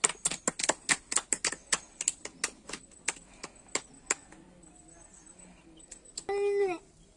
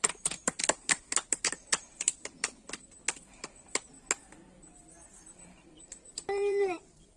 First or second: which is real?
first